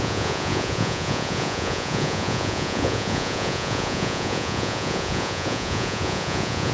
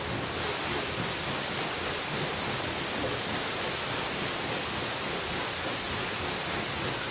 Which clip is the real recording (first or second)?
second